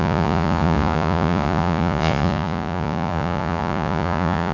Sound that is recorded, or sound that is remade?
remade